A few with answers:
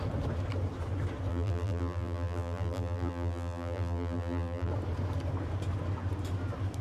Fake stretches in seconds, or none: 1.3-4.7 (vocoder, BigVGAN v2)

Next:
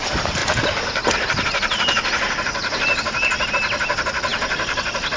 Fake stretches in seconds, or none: none

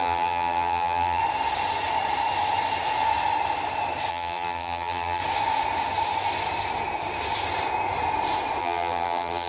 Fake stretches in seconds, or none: 0.0-1.2 (vocoder, BigVGAN v2); 4.1-5.2; 8.6-9.5

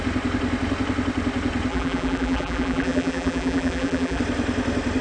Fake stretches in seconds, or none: 1.7-4.2 (vocoder, BigVGAN v2)

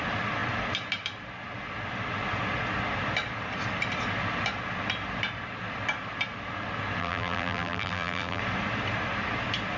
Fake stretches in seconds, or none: 7.0-8.4 (vocoder, BigVGAN v2)

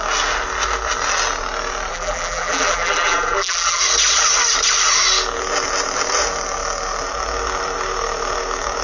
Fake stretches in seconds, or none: 1.9-3.8 (vocoder, BigVGAN v2)